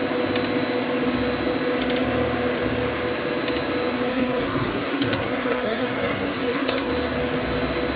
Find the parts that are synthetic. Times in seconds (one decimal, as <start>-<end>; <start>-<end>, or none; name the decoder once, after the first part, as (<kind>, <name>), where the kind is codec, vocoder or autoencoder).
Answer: 4.1-6.9 (codec, SNAC)